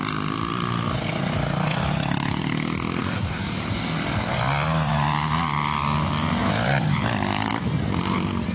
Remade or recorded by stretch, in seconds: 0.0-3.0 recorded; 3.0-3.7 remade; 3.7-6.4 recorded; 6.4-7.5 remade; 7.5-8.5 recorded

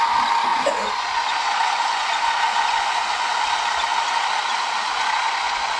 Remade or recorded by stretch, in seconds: 0.0-0.5 recorded; 0.5-3.4 remade; 3.4-4.8 recorded; 4.8-5.8 remade

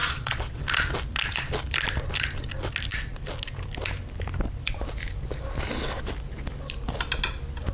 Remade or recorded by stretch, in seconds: 0.0-0.6 remade; 0.6-7.7 recorded